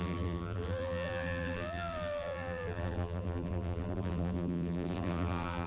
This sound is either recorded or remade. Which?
remade